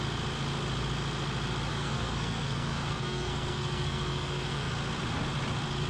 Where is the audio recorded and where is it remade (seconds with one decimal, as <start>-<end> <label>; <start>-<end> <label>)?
0.0-1.7 recorded; 1.7-4.7 remade; 4.7-5.9 recorded